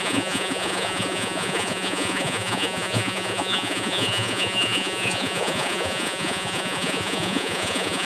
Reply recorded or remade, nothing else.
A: remade